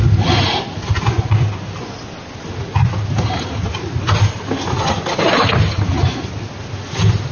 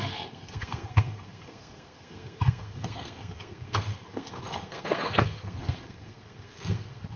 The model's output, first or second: second